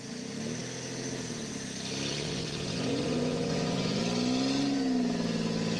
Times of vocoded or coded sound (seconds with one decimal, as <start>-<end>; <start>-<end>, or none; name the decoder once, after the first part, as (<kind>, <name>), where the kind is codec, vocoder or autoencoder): 2.1-4.0 (vocoder, Vocos)